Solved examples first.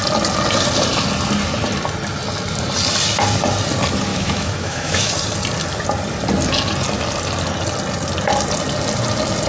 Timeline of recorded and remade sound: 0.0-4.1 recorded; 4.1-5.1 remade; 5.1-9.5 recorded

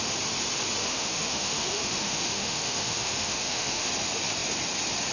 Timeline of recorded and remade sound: 0.0-0.8 recorded; 0.8-3.9 remade; 3.9-5.1 recorded

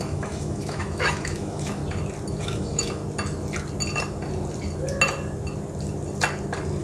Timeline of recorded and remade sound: 0.0-1.8 remade; 1.8-2.4 recorded; 2.4-3.0 remade; 3.0-6.8 recorded